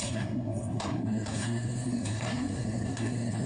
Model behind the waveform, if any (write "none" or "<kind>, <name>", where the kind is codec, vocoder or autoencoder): codec, SNAC